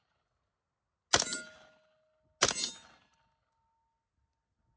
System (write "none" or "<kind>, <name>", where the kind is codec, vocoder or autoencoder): none